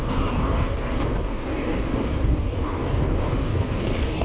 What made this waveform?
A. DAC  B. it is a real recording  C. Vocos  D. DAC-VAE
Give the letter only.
A